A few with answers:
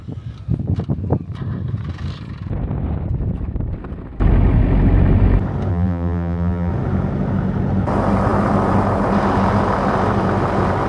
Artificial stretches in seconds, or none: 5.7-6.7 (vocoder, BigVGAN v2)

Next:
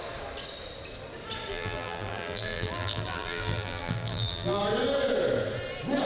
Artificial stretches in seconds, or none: 1.5-4.6 (vocoder, BigVGAN v2)

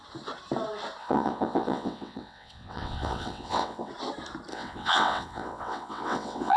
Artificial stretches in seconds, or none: 1.0-3.9 (vocoder, WaveNeXt); 4.5-6.6

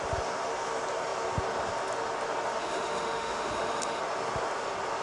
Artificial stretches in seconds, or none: 2.6-4.0 (autoencoder, DAC-VAE)

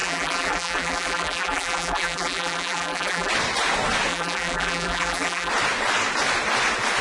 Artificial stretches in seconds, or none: 0.0-3.3 (vocoder, BigVGAN v2); 4.1-5.5

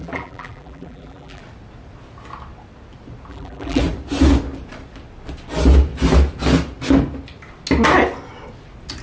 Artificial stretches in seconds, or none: 0.0-1.4 (vocoder, BigVGAN v2); 3.3-3.8

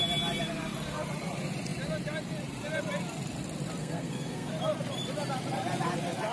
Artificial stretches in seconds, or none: 3.8-4.5 (codec, SNAC)

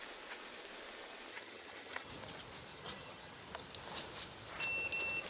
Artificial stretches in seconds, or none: 1.3-2.1 (vocoder, HiFi-GAN); 2.7-3.4